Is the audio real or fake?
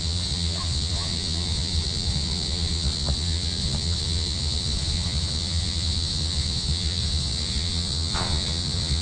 fake